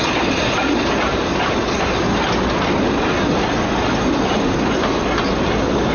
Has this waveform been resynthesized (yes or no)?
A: no